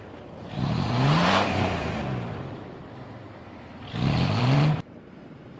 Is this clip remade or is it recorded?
remade